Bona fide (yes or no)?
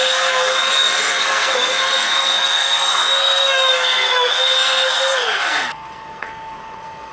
no